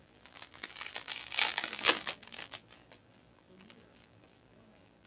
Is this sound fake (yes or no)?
yes